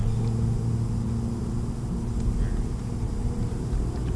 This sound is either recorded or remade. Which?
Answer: recorded